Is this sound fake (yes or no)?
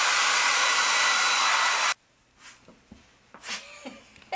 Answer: no